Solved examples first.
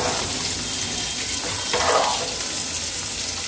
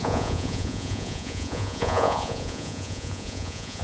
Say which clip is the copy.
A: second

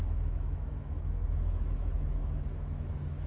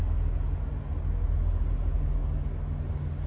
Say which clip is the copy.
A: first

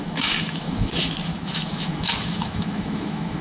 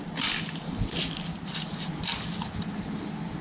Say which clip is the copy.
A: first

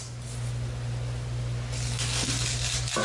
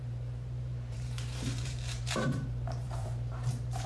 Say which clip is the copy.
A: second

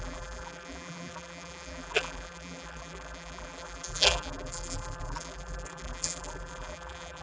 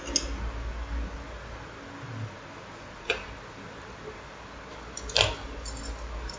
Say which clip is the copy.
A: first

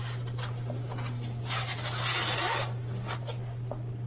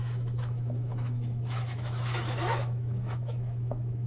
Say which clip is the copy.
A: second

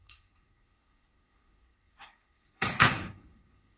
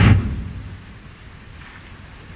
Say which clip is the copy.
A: first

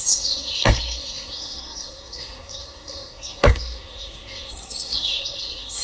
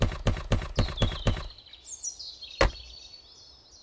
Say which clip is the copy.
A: first